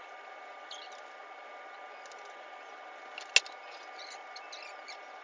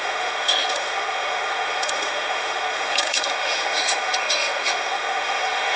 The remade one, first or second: second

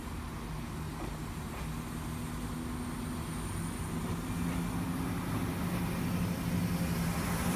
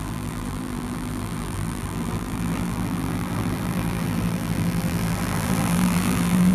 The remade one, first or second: second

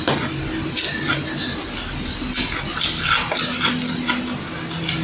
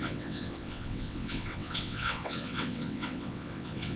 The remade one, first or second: second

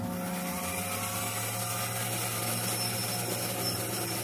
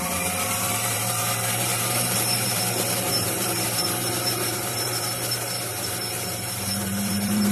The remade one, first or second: second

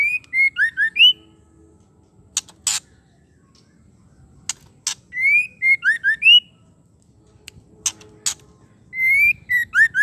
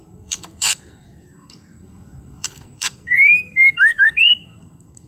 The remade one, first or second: second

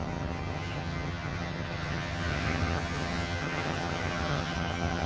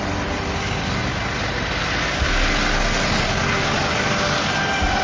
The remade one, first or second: first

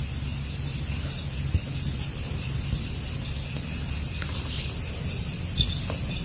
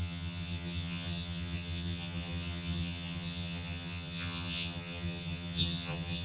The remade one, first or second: second